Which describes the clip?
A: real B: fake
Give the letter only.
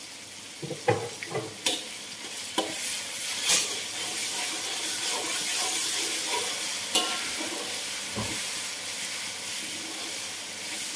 A